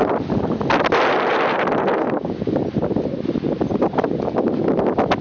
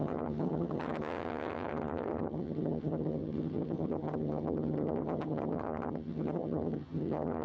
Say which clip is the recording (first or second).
first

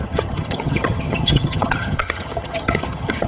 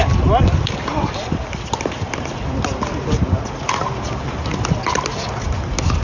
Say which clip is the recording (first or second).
second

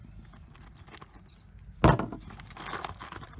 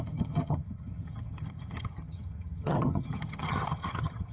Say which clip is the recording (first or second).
first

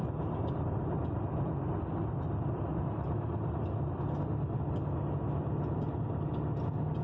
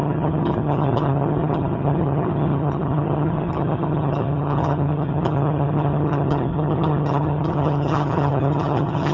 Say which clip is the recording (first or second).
first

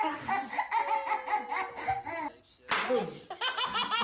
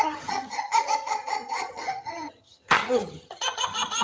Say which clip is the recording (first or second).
first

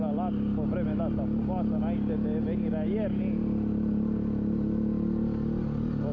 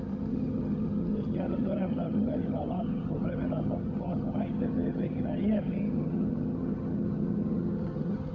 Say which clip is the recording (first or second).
first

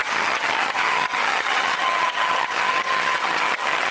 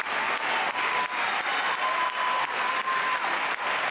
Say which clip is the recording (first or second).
second